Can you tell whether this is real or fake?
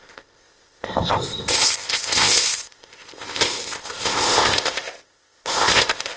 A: fake